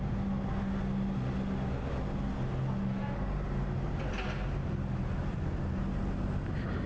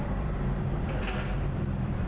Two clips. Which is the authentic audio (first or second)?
first